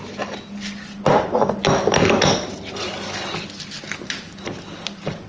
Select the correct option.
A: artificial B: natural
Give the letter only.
B